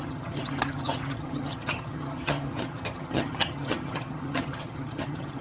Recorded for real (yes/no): no